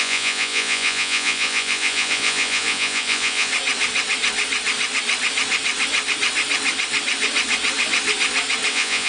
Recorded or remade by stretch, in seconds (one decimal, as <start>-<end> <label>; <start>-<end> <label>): 0.0-3.5 remade; 3.5-8.7 recorded; 8.7-9.1 remade